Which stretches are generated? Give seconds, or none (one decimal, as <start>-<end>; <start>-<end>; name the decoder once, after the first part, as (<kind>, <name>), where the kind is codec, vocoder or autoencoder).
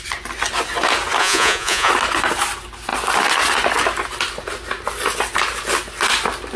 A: 1.2-1.9 (vocoder, Vocos)